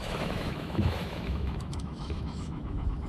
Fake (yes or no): yes